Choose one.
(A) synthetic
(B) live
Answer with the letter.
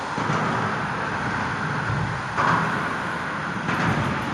B